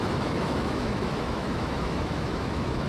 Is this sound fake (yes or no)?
yes